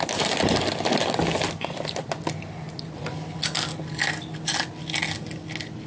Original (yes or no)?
yes